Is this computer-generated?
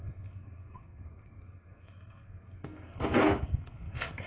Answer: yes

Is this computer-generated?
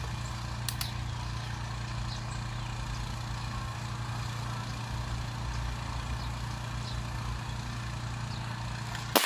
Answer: no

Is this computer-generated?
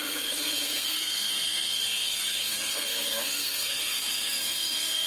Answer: yes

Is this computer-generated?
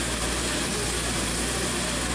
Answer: no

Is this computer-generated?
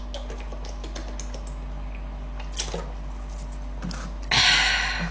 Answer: no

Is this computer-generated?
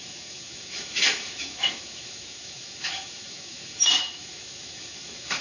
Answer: yes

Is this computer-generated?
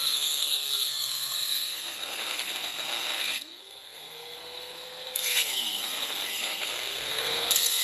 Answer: yes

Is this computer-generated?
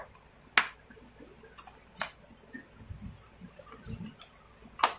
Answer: no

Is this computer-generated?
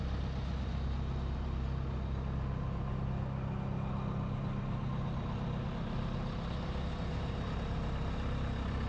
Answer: no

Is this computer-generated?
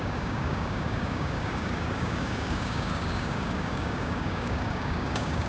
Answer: yes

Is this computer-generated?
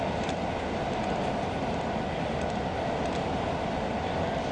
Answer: no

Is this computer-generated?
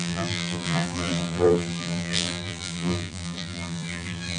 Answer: yes